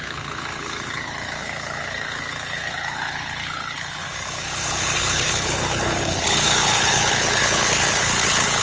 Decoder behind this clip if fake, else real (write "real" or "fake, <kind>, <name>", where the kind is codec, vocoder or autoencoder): fake, codec, HILCodec